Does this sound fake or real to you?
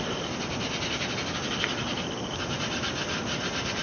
real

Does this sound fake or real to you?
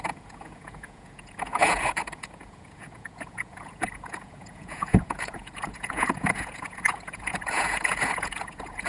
fake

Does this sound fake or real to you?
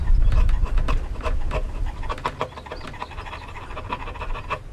real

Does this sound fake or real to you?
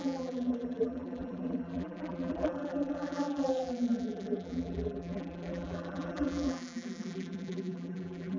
fake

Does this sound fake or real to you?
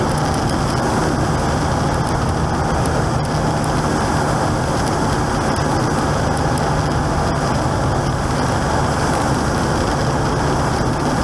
real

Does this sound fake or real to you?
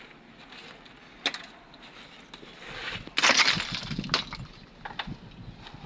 real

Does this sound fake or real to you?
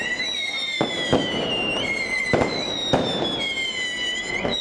real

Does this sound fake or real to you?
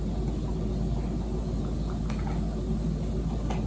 real